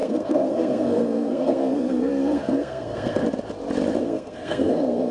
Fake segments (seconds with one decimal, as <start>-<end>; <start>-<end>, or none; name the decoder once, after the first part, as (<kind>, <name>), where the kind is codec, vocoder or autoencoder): 0.0-3.2 (codec, SNAC); 4.0-5.1